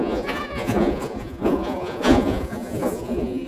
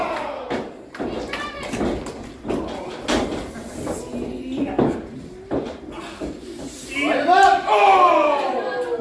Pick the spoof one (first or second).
first